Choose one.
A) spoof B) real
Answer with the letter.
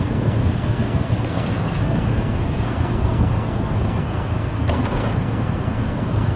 A